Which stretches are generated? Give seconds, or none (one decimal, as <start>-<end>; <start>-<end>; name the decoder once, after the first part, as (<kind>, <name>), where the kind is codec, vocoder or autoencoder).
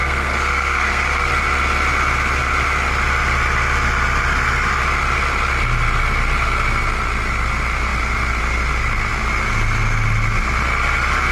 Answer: 0.0-1.3 (codec, SNAC)